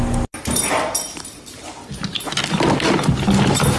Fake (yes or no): no